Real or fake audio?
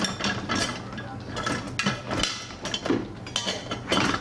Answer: real